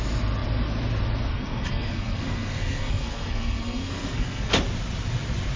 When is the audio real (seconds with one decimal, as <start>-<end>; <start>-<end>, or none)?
0.0-1.3; 4.5-5.6